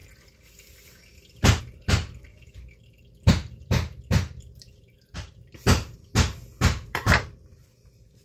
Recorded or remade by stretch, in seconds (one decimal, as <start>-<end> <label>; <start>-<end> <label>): 0.0-1.6 recorded; 1.6-2.3 remade; 2.3-3.3 recorded; 3.3-5.5 remade; 5.5-6.6 recorded; 6.6-8.2 remade